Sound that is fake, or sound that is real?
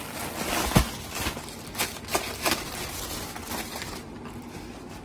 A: real